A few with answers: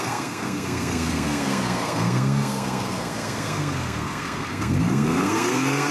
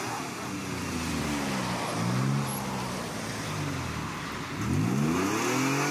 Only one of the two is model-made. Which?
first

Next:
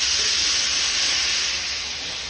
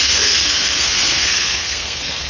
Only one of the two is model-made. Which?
second